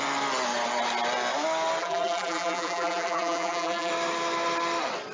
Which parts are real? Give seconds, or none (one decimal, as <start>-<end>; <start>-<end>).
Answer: 0.0-1.8; 3.9-5.1